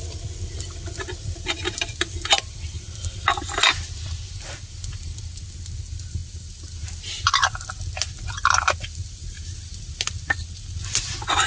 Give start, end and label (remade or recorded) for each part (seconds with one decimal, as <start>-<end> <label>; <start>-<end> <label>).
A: 0.0-11.5 recorded